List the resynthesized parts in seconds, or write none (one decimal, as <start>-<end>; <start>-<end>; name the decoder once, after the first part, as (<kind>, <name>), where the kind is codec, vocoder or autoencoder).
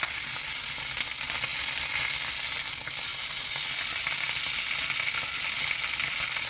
none